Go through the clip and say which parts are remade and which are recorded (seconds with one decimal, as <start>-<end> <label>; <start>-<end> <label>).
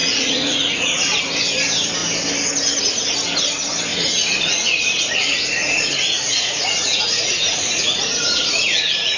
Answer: 0.0-1.2 remade; 1.2-3.9 recorded; 3.9-5.1 remade; 5.1-5.6 recorded; 5.6-9.2 remade